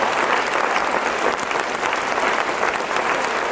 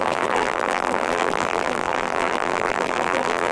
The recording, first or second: first